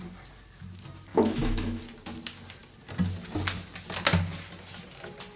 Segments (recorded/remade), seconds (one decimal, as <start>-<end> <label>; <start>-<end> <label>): 0.0-1.1 recorded; 1.1-1.8 remade; 1.8-5.4 recorded